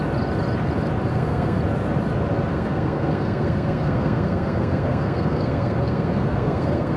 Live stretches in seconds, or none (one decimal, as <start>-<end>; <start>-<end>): 0.0-1.1; 1.6-2.5